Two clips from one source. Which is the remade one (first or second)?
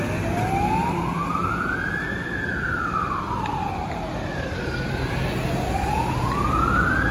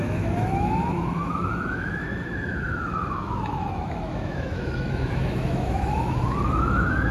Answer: second